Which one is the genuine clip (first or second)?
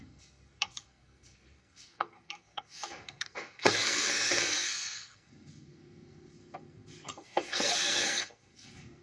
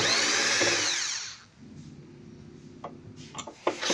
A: second